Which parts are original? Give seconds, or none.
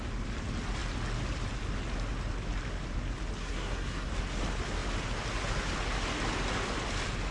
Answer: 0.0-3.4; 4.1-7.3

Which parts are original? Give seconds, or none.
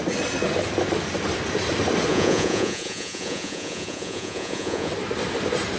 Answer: 0.0-2.1; 4.9-5.8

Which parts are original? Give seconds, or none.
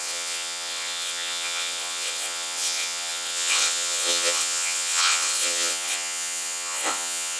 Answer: none